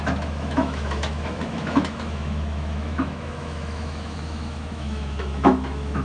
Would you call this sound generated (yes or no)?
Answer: yes